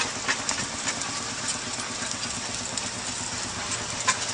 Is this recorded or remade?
recorded